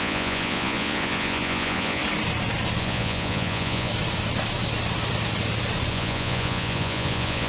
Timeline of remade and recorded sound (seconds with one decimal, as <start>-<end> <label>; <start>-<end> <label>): 0.0-2.0 remade; 2.0-2.8 recorded; 2.8-3.9 remade; 3.9-5.9 recorded; 5.9-7.5 remade